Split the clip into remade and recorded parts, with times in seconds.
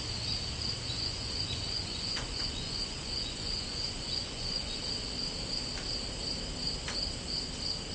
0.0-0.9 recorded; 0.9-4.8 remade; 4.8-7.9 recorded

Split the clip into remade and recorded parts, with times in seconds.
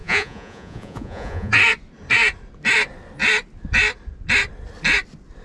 0.0-1.5 remade; 1.5-5.4 recorded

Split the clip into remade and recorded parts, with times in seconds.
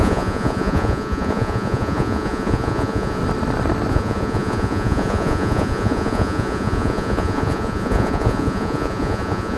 0.0-3.2 remade; 3.2-3.9 recorded; 3.9-9.6 remade